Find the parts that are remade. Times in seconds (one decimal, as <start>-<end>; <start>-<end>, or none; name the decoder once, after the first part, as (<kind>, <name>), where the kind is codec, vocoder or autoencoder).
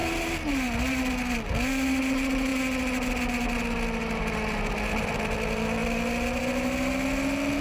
none